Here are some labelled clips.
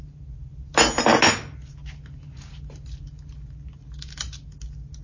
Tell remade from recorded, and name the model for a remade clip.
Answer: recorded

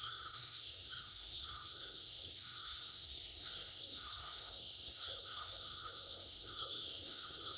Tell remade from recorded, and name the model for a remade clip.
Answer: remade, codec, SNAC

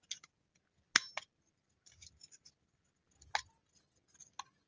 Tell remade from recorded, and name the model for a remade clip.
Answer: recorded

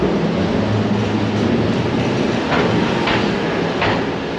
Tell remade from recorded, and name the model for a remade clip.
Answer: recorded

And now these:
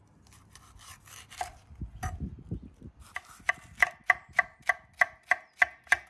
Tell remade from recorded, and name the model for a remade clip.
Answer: recorded